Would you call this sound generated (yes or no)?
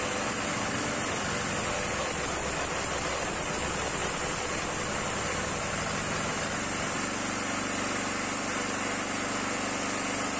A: no